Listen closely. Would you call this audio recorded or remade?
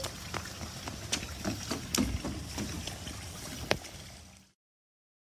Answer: recorded